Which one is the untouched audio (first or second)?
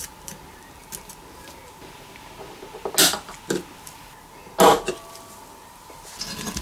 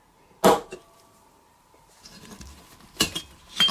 first